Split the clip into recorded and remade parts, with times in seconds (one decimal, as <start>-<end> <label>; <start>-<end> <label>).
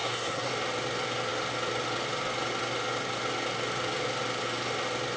0.0-0.5 remade; 0.5-5.2 recorded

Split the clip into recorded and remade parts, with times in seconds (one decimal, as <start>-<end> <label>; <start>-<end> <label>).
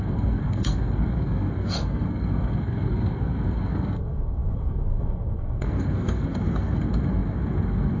0.0-8.0 remade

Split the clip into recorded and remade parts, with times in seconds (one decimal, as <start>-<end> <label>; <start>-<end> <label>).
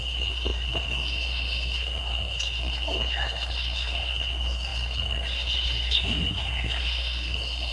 0.0-7.7 remade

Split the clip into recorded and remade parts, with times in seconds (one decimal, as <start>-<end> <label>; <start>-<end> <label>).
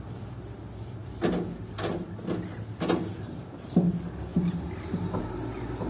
0.0-5.9 recorded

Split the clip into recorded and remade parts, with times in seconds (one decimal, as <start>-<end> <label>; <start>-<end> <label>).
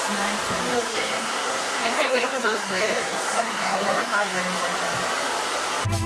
0.0-0.7 recorded; 0.7-4.4 remade; 4.4-6.1 recorded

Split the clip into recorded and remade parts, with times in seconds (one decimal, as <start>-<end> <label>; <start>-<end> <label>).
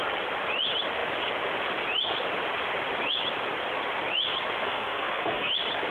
0.0-4.6 recorded; 4.6-5.5 remade; 5.5-5.9 recorded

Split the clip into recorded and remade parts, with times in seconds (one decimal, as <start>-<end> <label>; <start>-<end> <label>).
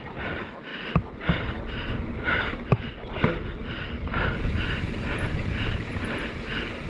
0.0-6.9 recorded